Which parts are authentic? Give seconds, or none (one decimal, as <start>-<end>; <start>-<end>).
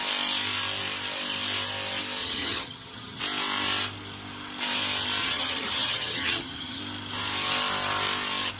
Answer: 0.0-2.2; 3.2-5.2; 6.8-8.6